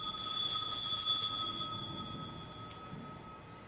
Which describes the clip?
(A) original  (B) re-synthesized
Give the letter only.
A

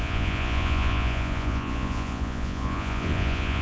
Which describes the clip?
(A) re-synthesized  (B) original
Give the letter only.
A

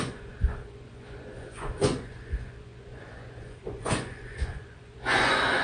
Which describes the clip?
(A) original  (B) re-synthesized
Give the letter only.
B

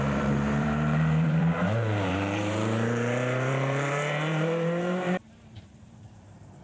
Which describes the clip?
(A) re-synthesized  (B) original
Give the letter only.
A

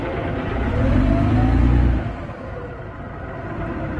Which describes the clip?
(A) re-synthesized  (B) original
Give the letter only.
B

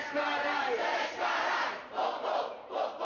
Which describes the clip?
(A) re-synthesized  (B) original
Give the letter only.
A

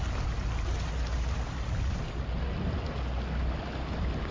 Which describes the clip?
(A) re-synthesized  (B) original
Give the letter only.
B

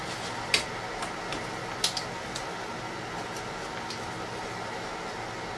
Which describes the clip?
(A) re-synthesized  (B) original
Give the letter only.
B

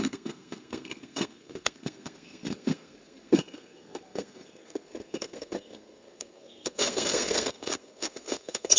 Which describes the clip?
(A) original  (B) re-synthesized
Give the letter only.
B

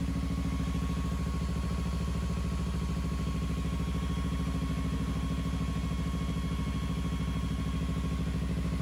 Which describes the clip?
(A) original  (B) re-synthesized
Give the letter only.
A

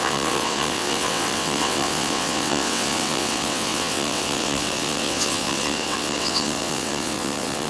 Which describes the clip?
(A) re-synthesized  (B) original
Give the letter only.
A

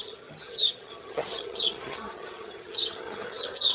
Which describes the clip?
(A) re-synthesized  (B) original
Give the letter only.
A